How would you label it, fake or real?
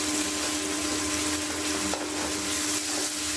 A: real